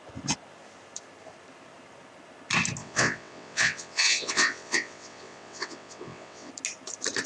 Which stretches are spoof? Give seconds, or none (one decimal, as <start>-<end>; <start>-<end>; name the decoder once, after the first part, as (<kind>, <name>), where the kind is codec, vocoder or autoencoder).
2.8-6.5 (vocoder, WaveNeXt)